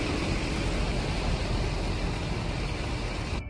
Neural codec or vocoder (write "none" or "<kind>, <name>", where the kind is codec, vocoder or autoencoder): none